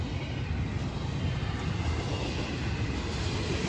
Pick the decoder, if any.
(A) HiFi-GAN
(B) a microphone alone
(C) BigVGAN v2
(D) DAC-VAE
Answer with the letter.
B